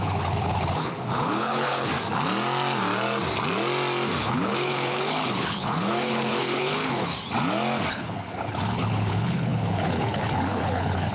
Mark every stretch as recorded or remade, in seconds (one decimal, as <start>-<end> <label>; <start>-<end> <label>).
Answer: 0.0-1.9 remade; 1.9-4.2 recorded; 4.2-7.1 remade; 7.1-7.9 recorded; 7.9-11.1 remade